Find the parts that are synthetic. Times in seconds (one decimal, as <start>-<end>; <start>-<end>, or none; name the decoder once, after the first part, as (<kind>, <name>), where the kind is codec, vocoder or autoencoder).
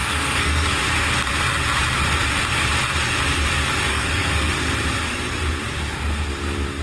0.0-0.7 (codec, SNAC); 3.9-4.5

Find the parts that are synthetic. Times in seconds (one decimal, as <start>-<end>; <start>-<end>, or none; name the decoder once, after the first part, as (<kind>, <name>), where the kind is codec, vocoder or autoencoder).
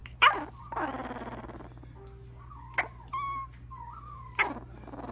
none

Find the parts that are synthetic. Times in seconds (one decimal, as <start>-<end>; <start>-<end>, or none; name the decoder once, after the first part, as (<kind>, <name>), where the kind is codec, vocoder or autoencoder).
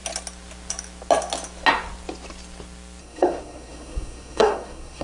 3.0-5.0 (codec, SNAC)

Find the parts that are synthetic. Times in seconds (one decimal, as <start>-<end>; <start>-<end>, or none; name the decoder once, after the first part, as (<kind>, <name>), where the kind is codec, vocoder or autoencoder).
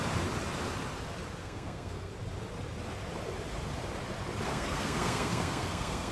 1.4-2.1 (codec, SNAC); 4.5-6.1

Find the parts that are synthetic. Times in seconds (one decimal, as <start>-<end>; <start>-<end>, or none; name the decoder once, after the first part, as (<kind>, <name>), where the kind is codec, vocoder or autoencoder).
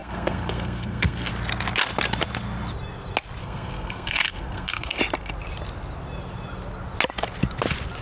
0.0-1.3 (codec, SNAC); 3.4-5.0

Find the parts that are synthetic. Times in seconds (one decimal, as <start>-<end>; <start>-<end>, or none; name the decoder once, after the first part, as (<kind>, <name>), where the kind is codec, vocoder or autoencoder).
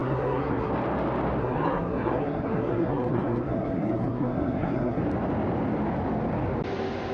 0.0-0.7 (codec, SNAC); 1.4-5.0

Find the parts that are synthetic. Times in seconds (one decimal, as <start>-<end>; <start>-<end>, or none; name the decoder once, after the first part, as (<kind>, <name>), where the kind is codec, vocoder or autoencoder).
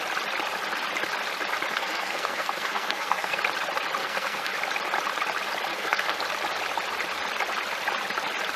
1.7-3.4 (codec, SNAC); 4.0-4.5; 5.7-6.2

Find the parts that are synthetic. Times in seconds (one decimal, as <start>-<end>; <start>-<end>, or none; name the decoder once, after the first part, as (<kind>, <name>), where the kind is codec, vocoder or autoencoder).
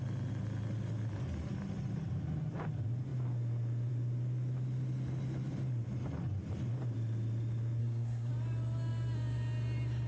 7.8-8.3 (codec, SNAC)